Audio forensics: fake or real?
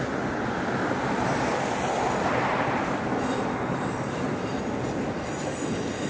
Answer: real